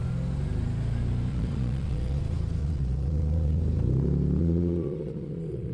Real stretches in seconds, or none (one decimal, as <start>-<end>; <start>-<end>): 0.0-1.3; 2.2-2.6; 3.6-4.4

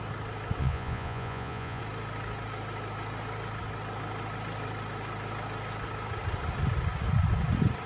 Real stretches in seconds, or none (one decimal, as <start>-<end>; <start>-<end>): 0.0-0.6; 1.8-7.9

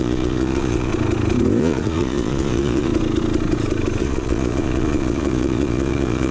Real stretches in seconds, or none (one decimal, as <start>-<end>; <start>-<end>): 0.9-1.6; 2.9-4.0

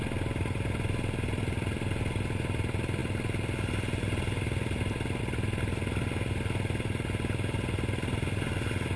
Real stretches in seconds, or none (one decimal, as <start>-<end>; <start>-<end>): 0.0-9.0

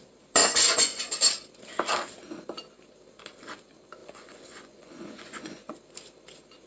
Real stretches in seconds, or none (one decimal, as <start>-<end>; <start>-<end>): 0.0-0.4; 1.1-4.0; 5.7-6.7